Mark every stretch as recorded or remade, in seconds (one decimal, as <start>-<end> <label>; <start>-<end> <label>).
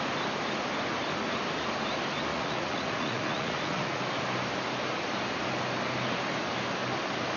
0.0-2.3 recorded; 2.3-4.0 remade; 4.0-7.4 recorded